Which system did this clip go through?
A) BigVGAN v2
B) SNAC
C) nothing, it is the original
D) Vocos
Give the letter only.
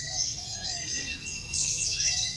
B